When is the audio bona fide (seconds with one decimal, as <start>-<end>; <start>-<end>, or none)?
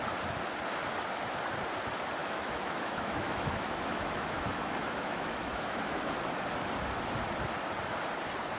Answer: 0.0-2.2; 6.1-8.6